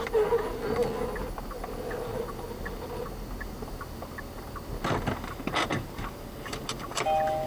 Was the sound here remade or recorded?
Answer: recorded